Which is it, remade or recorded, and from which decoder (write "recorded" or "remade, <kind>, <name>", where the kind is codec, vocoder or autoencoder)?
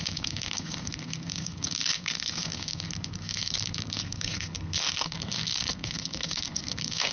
remade, codec, SNAC